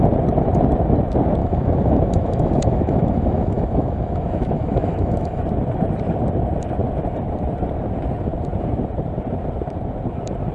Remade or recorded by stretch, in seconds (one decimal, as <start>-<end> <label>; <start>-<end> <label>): 0.0-1.4 recorded; 1.4-5.4 remade; 5.4-10.5 recorded